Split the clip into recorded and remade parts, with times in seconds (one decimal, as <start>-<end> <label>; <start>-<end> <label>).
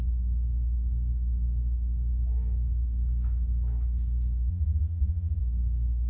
0.0-4.5 recorded; 4.5-5.4 remade; 5.4-6.1 recorded